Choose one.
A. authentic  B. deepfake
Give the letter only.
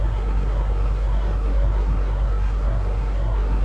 B